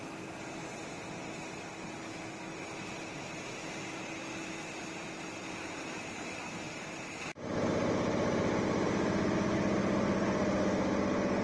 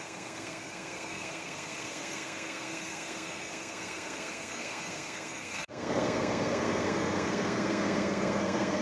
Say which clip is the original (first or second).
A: first